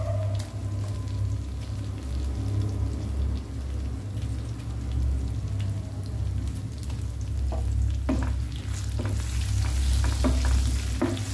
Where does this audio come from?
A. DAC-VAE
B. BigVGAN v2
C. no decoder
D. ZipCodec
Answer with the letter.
C